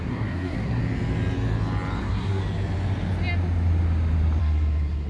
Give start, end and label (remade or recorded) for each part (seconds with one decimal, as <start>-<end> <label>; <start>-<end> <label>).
0.0-0.8 remade; 0.8-2.0 recorded; 2.0-2.4 remade; 2.4-4.4 recorded; 4.4-5.1 remade